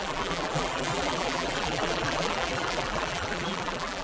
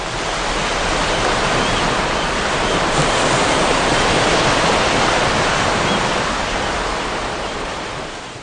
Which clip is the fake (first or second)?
first